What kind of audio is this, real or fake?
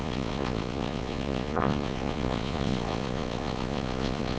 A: fake